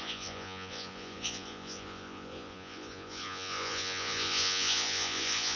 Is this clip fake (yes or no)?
yes